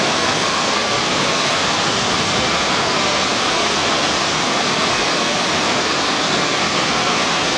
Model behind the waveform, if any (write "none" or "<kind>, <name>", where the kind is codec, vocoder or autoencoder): codec, SNAC